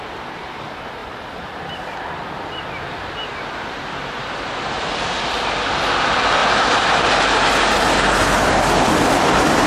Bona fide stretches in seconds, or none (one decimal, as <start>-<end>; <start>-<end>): 0.0-9.7